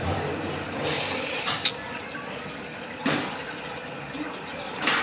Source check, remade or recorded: recorded